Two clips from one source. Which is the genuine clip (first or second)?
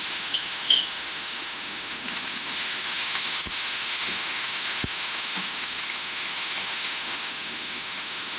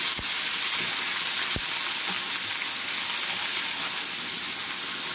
second